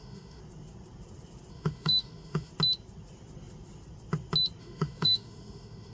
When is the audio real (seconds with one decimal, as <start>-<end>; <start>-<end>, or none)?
0.4-1.5; 2.5-4.6

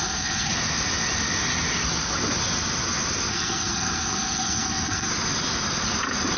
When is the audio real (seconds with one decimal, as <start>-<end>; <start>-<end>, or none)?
0.5-3.3; 5.1-6.4

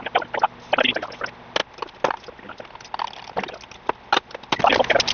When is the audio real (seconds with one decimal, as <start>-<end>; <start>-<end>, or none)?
0.0-5.1